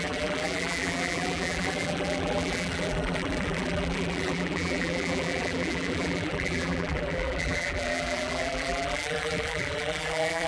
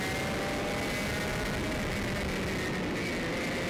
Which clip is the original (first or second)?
second